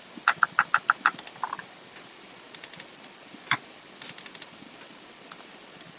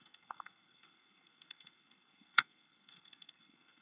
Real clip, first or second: first